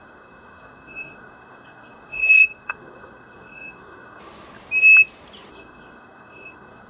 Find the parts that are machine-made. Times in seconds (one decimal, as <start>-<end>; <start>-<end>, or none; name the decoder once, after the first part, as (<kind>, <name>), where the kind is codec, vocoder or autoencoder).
0.0-4.2 (codec, SNAC); 5.5-6.9